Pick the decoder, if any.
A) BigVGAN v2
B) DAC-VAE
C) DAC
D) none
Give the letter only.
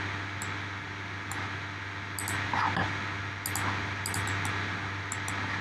D